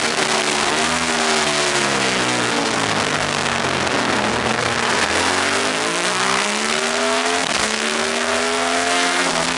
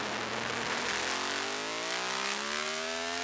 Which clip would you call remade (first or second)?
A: first